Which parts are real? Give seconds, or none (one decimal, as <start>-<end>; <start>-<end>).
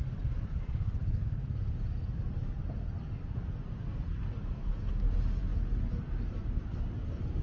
0.0-7.4